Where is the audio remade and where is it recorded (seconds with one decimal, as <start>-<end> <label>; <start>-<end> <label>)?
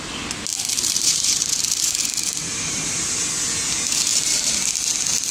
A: 0.0-0.5 recorded; 0.5-3.3 remade; 3.3-4.1 recorded; 4.1-4.7 remade; 4.7-5.3 recorded